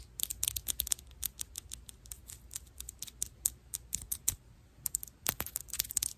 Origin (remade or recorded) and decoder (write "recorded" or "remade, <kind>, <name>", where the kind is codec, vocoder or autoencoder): recorded